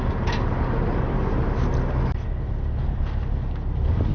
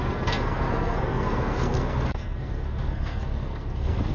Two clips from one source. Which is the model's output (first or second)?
second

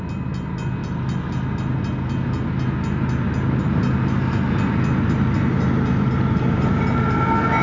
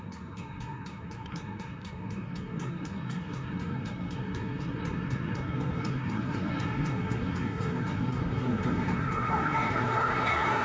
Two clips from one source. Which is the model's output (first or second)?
second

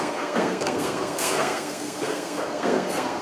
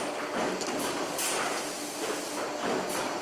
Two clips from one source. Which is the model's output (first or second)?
first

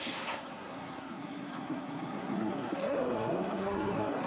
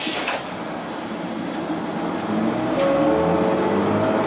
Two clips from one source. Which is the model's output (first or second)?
first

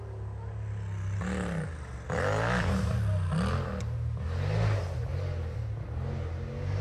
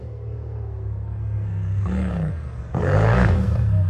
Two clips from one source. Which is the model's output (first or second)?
second